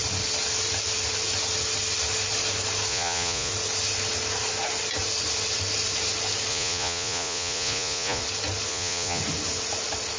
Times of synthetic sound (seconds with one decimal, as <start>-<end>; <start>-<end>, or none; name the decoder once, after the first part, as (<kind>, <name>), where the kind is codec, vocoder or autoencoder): 2.9-3.5 (vocoder, Vocos); 6.5-8.2; 8.7-9.2